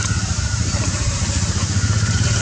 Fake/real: real